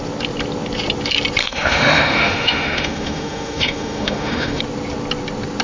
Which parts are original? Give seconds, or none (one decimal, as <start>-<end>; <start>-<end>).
0.0-1.4; 4.6-5.6